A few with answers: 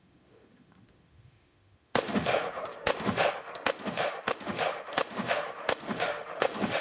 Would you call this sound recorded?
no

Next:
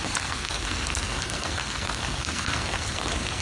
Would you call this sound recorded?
no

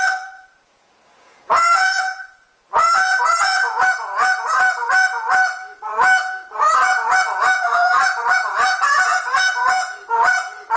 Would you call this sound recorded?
no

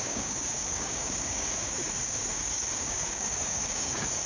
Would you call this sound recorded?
no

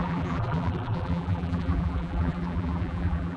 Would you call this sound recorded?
no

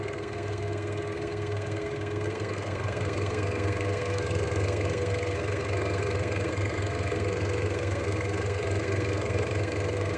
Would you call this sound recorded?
no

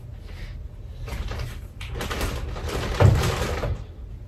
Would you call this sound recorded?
yes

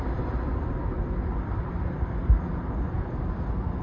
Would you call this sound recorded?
yes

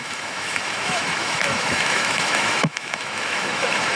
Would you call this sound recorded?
no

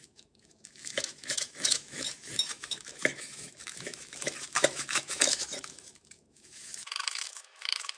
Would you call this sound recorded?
no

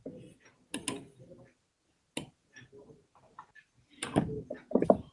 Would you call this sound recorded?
yes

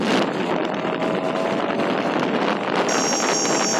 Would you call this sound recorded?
yes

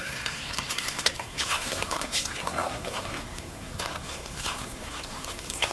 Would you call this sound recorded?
no